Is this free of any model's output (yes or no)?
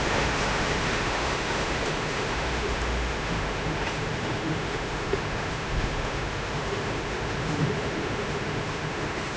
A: no